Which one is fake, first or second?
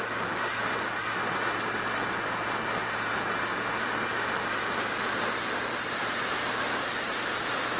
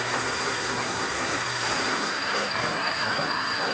second